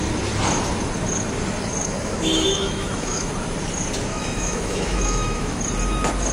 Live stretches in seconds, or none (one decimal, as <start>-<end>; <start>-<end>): 0.0-1.8; 3.3-4.1; 5.6-6.3